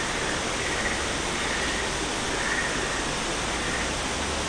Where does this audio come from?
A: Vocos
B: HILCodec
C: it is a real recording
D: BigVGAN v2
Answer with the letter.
C